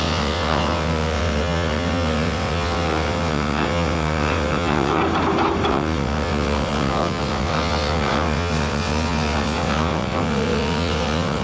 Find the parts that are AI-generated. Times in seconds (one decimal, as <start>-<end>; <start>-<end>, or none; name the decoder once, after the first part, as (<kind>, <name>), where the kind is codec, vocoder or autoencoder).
0.0-5.0 (vocoder, WaveNeXt); 5.7-11.4